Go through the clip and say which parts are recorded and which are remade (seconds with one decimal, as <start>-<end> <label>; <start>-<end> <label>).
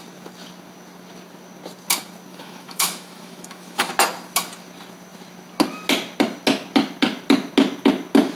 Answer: 0.0-2.3 recorded; 2.3-3.9 remade; 3.9-8.4 recorded